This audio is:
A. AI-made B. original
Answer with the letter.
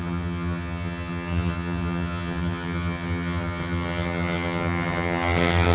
A